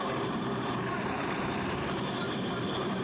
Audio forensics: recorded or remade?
remade